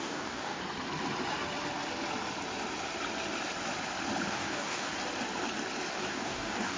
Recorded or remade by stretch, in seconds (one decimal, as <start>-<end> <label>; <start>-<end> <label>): 0.0-0.6 remade; 0.6-4.3 recorded; 4.3-4.9 remade; 4.9-5.9 recorded; 5.9-6.8 remade